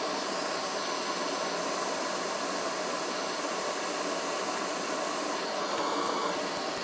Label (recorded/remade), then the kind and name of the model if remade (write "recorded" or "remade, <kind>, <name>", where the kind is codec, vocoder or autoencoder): recorded